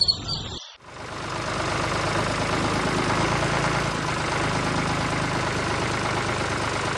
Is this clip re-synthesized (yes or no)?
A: no